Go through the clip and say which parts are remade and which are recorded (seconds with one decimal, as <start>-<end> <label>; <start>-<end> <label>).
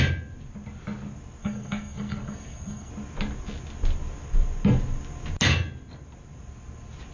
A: 0.0-1.4 recorded; 1.4-2.9 remade; 2.9-7.1 recorded